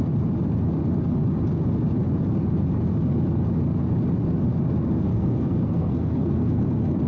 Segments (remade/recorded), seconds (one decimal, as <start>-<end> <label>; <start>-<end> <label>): 0.0-5.1 recorded; 5.1-6.6 remade; 6.6-7.1 recorded